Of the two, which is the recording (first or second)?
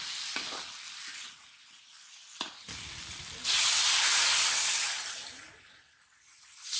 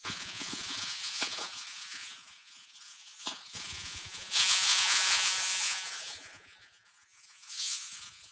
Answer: first